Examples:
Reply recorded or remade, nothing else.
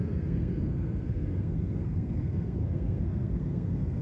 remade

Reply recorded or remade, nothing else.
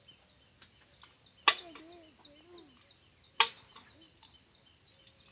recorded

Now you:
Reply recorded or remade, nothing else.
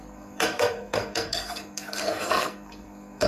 remade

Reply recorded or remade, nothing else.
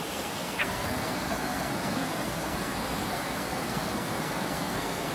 remade